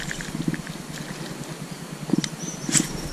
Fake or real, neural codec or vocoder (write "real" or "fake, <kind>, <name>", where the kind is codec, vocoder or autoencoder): real